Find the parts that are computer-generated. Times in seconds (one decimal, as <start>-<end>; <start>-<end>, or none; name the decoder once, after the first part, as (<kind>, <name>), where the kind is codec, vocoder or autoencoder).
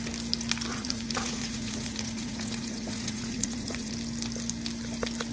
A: 0.7-3.9 (vocoder, Vocos)